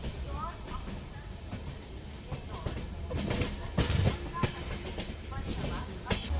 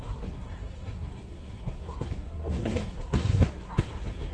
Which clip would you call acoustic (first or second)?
first